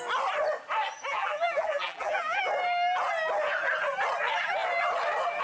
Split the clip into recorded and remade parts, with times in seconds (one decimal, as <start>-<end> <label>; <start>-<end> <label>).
0.0-1.1 recorded; 1.1-2.4 remade; 2.4-5.4 recorded